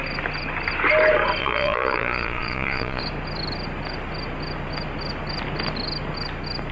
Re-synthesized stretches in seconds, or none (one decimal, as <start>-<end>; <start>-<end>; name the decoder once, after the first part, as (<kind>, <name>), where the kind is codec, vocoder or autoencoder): 1.4-3.0 (vocoder, Vocos)